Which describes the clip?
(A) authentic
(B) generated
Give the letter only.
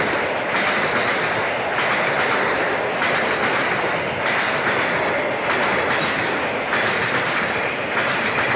A